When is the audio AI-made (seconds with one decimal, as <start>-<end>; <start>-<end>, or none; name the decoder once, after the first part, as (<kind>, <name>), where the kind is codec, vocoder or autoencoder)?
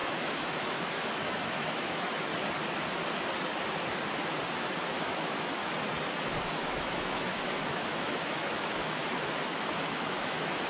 0.0-2.3 (autoencoder, DAC-VAE); 4.9-5.6; 6.6-9.0; 9.8-10.7